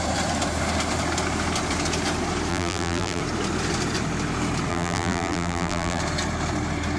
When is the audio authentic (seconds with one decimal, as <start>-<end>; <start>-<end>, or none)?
0.0-2.5; 3.2-4.7; 6.0-7.0